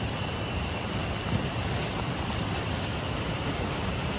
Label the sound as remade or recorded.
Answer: remade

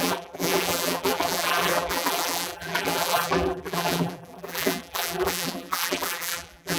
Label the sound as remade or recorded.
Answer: remade